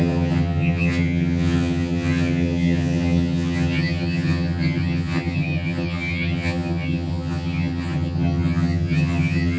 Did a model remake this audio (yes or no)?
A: yes